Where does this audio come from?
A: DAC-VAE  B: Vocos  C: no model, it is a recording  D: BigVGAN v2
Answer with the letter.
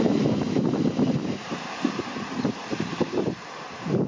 D